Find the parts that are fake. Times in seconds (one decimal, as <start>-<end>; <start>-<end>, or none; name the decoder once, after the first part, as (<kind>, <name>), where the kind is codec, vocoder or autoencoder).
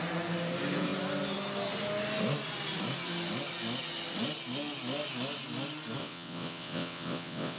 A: 6.0-7.6 (vocoder, WaveNeXt)